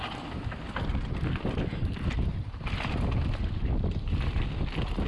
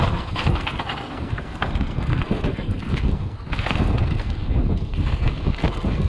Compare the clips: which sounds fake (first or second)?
second